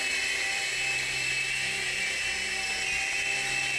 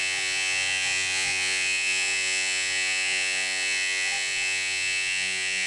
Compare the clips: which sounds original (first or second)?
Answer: first